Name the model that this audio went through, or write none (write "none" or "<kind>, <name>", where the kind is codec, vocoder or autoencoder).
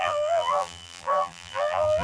vocoder, BigVGAN v2